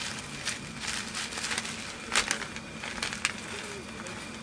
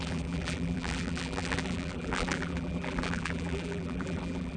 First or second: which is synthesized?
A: second